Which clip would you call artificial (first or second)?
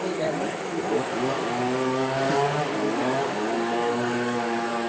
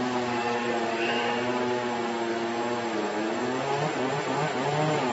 first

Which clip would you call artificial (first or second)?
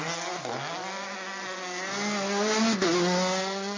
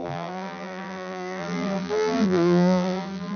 second